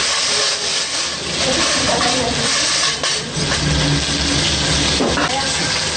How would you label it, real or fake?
real